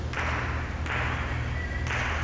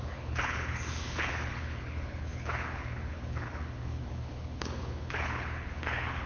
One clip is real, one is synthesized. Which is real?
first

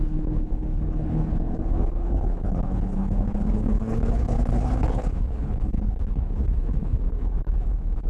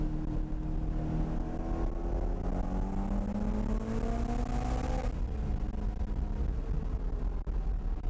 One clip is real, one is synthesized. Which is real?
second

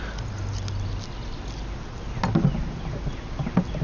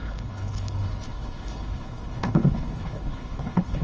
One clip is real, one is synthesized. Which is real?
first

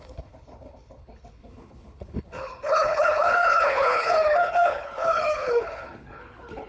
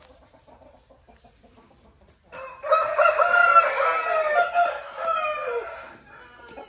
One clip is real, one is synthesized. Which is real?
second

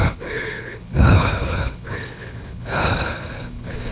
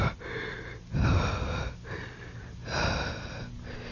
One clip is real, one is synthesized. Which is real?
second